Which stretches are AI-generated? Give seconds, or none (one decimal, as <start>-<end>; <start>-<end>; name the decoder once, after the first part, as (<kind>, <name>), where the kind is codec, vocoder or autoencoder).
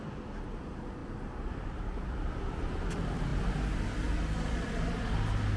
none